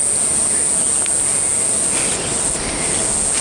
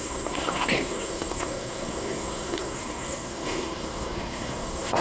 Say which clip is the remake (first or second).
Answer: second